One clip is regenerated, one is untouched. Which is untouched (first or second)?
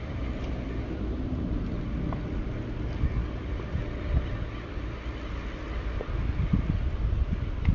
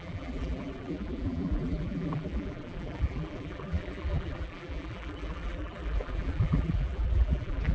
first